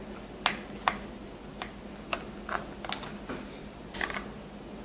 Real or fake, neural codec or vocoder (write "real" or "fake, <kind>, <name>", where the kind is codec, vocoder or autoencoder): real